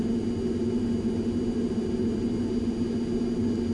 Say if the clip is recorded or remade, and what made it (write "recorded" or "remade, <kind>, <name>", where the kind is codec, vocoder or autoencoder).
recorded